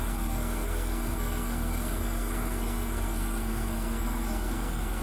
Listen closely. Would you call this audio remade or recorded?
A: remade